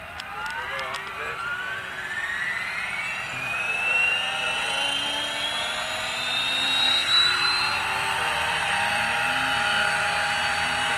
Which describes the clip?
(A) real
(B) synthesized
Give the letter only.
B